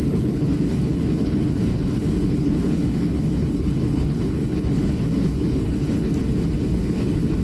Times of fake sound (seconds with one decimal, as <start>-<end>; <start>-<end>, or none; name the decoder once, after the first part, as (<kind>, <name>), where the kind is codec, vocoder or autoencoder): 0.0-6.1 (codec, HILCodec); 6.6-7.4